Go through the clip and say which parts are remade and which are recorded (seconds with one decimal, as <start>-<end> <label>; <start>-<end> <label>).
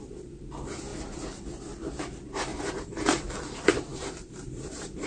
0.0-0.9 recorded; 0.9-1.6 remade; 1.6-2.5 recorded; 2.5-3.2 remade; 3.2-3.9 recorded; 3.9-5.1 remade